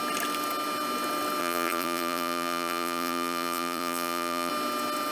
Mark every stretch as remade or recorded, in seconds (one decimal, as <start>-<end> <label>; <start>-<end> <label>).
0.0-1.4 recorded; 1.4-4.5 remade; 4.5-5.1 recorded